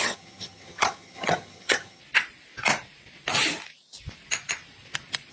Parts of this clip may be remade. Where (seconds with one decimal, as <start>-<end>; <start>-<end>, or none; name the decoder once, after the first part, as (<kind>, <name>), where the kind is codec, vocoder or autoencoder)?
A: 0.0-2.0 (vocoder, HiFi-GAN)